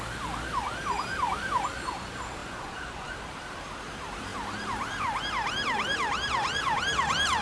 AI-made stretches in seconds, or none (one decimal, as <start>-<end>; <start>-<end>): 2.4-3.1